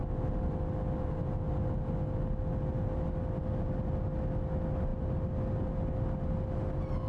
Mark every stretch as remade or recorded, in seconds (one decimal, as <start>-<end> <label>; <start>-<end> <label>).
0.0-7.1 recorded